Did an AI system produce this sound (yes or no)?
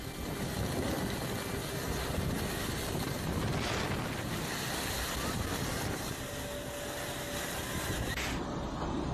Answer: no